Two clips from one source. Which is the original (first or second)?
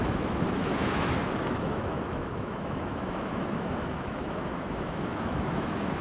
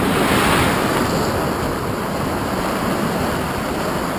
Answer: second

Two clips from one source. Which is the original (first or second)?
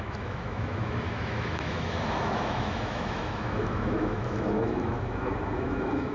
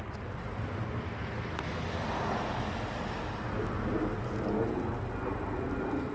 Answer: second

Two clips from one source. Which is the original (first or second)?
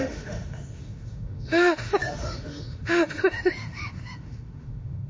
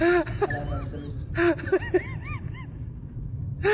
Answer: second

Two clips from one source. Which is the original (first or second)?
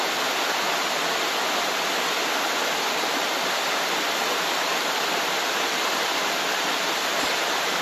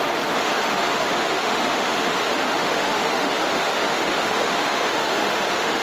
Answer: first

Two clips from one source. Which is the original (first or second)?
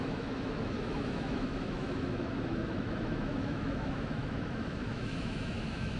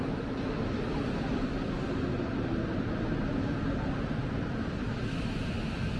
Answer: second